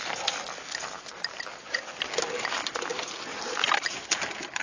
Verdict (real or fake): real